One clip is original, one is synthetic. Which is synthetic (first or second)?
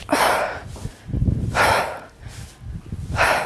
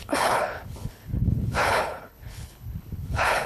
second